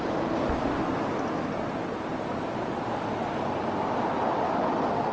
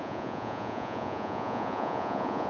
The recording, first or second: first